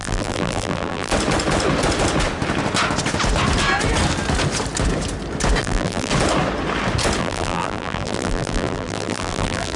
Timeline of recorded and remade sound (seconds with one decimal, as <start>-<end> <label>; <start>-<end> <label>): 0.0-1.1 remade; 1.1-5.6 recorded; 5.6-6.1 remade; 6.1-7.2 recorded; 7.2-9.8 remade